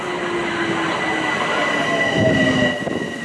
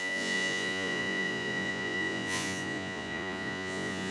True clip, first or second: first